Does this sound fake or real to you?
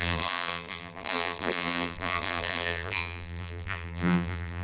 fake